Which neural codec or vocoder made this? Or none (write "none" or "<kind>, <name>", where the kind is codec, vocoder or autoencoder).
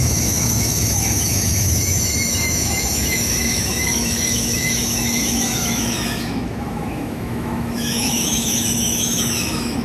autoencoder, DAC-VAE